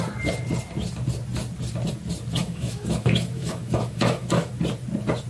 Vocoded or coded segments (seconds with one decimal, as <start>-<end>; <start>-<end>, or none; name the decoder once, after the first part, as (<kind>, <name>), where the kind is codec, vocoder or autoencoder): 2.4-4.5 (autoencoder, DAC-VAE)